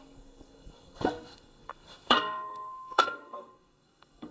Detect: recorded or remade remade